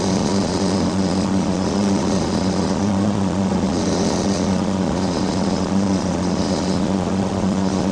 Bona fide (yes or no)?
no